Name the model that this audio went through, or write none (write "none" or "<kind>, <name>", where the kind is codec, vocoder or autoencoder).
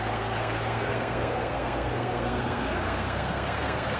codec, SNAC